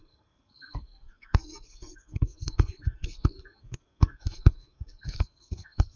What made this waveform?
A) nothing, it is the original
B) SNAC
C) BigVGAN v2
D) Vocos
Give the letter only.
B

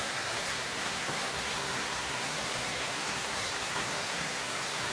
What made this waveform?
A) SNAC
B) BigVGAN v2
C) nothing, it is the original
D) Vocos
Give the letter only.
A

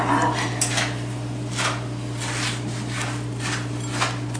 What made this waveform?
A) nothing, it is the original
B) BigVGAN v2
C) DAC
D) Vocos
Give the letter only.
A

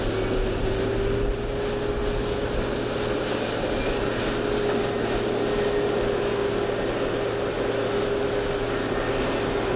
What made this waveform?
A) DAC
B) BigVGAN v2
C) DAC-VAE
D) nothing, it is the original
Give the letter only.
D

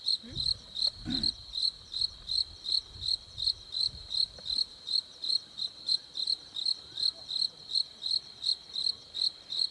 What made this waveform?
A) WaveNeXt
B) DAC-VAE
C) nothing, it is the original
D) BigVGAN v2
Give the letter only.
D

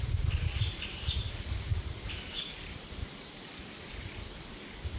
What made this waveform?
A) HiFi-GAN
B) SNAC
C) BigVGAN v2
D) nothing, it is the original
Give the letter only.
D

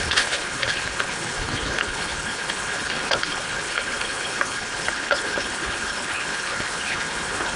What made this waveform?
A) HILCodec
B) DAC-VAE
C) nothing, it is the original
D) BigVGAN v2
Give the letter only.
A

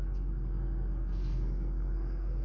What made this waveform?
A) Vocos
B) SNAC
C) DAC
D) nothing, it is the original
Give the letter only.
B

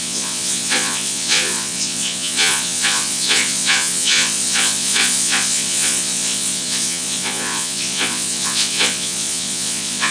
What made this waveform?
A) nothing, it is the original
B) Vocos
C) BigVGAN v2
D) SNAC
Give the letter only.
B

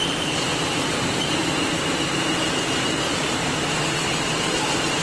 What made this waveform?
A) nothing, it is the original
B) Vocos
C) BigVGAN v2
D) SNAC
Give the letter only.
A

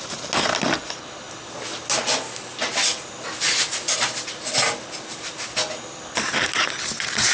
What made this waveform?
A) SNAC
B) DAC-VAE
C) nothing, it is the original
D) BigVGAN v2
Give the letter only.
C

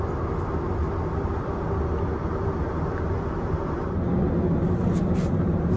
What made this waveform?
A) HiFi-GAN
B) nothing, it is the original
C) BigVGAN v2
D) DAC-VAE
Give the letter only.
B